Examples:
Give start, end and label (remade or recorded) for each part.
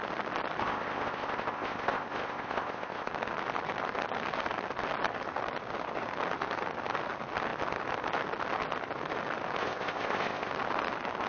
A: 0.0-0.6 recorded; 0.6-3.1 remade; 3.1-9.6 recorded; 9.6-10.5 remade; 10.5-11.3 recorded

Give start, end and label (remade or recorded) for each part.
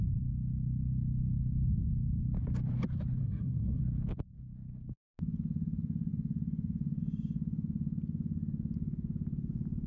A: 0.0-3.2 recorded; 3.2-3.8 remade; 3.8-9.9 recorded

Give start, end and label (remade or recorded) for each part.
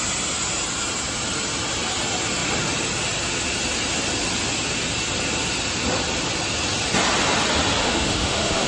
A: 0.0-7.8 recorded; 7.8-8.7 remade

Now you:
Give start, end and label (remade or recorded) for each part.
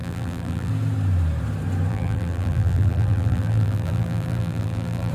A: 0.0-0.7 remade; 0.7-1.9 recorded; 1.9-5.1 remade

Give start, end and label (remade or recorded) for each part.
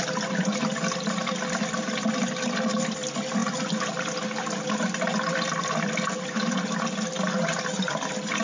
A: 0.0-5.1 recorded; 5.1-6.1 remade; 6.1-8.4 recorded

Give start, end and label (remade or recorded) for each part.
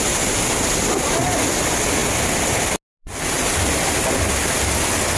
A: 0.0-5.2 recorded